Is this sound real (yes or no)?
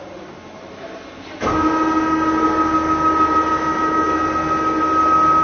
yes